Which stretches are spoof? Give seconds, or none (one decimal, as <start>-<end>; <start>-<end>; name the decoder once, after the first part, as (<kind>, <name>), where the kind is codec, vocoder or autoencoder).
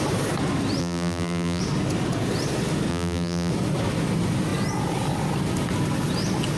0.8-1.6 (vocoder, BigVGAN v2); 2.9-3.5